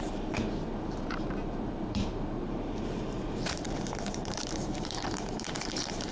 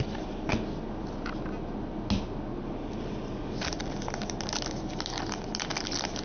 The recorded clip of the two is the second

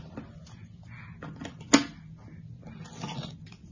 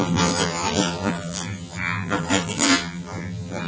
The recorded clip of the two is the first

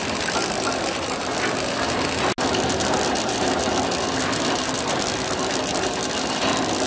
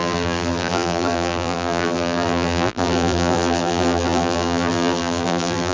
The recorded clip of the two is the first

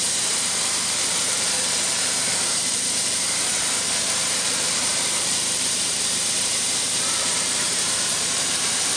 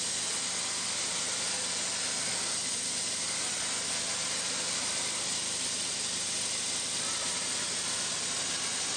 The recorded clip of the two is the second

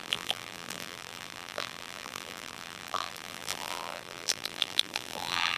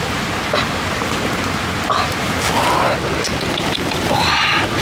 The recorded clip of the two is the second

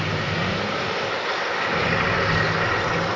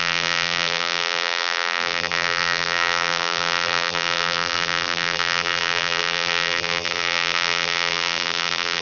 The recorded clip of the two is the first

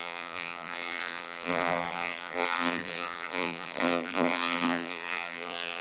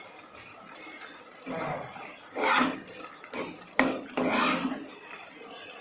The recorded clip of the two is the second